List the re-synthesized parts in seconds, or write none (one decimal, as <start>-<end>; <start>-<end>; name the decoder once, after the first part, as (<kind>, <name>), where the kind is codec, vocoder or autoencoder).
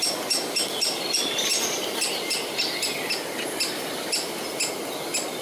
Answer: none